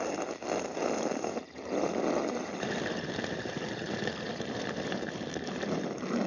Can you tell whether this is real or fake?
real